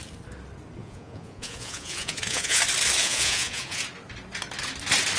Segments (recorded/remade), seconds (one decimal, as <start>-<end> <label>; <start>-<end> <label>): 0.0-0.8 recorded; 0.8-2.6 remade; 2.6-3.0 recorded; 3.0-3.8 remade; 3.8-5.2 recorded